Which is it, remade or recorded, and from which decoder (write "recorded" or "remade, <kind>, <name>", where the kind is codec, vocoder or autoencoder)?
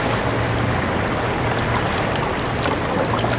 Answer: recorded